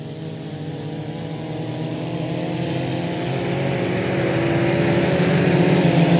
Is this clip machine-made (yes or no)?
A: no